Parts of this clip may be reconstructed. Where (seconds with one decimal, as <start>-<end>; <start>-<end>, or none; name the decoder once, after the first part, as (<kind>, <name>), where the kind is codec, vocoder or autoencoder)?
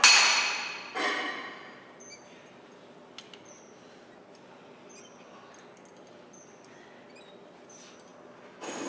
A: none